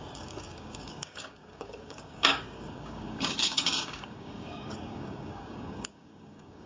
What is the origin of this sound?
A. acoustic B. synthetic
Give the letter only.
B